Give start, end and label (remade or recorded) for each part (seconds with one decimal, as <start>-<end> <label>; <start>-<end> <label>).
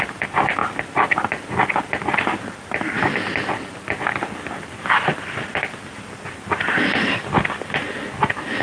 0.0-8.6 recorded